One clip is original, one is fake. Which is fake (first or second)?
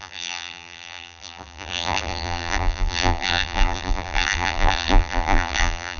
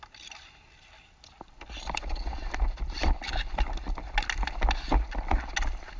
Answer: first